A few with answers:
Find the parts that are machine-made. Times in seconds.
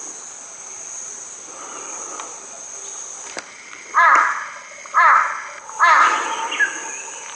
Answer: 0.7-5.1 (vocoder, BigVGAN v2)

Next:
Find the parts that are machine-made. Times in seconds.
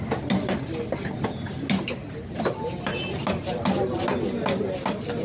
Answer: none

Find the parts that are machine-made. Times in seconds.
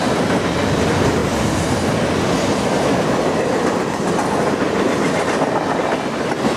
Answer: none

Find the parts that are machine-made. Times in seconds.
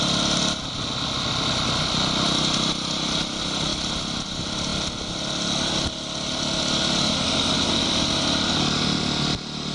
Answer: none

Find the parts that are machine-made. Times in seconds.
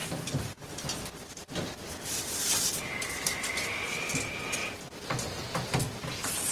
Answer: 0.0-2.8 (vocoder, BigVGAN v2)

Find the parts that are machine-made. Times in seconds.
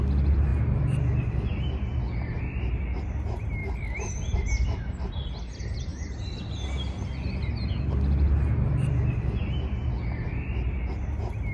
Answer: none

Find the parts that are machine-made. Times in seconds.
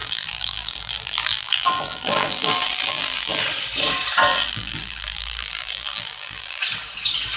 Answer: 0.0-3.4 (vocoder, BigVGAN v2); 4.3-6.6